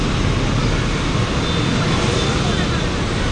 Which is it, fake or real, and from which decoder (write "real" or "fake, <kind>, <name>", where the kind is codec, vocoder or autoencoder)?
real